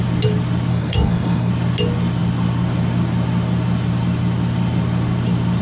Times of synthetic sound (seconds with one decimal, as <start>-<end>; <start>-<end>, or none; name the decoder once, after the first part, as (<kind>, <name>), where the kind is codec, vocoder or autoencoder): 0.7-1.5 (codec, SNAC)